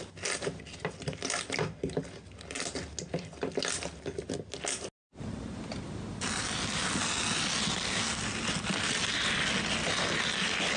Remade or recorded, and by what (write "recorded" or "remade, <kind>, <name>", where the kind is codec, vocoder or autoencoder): recorded